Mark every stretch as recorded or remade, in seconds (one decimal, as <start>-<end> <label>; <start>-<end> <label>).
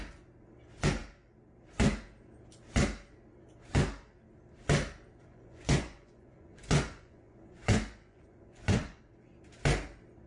0.0-5.3 recorded; 5.3-9.0 remade; 9.0-10.3 recorded